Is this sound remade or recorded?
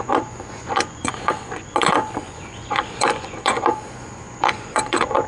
remade